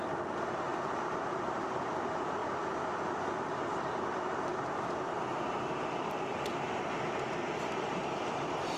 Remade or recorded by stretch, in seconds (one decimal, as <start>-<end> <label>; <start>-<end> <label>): 0.0-0.7 recorded; 0.7-1.6 remade; 1.6-2.4 recorded; 2.4-3.5 remade; 3.5-4.5 recorded; 4.5-6.3 remade; 6.3-8.8 recorded

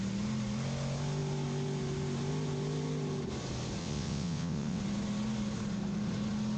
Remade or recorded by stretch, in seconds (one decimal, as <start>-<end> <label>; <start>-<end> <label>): 0.0-3.8 recorded; 3.8-4.8 remade; 4.8-6.6 recorded

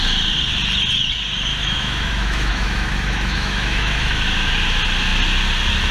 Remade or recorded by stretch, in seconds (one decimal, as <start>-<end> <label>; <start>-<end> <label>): 0.0-1.5 recorded; 1.5-4.1 remade; 4.1-5.9 recorded

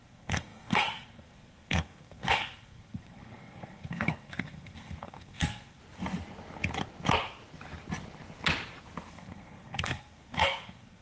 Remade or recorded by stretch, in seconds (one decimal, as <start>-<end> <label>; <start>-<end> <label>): 0.0-5.8 remade; 5.8-9.1 recorded; 9.1-11.0 remade